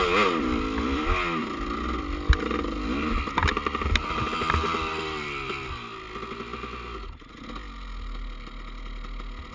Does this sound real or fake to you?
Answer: real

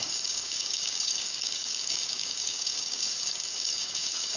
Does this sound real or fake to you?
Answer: fake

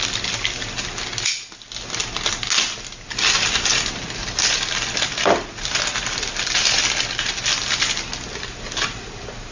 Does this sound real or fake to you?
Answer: real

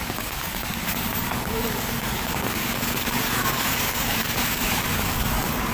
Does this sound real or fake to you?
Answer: fake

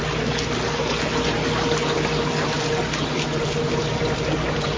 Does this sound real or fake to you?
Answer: real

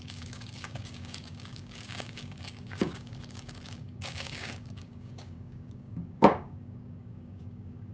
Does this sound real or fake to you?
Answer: fake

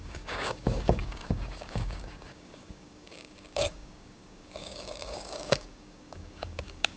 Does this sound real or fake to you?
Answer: fake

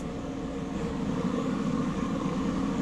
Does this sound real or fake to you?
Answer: fake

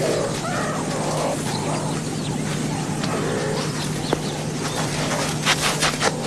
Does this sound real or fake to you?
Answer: real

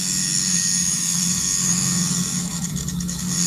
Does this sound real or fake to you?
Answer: fake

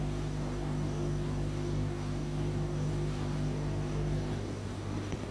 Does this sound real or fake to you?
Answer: fake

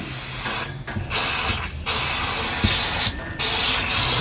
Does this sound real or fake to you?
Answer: real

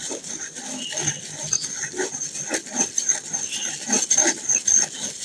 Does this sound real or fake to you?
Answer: real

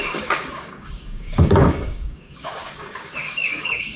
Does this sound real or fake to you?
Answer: fake